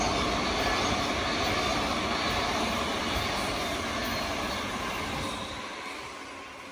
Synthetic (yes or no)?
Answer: no